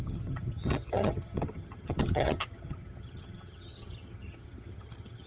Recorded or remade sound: remade